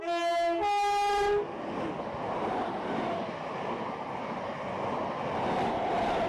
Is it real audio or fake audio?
real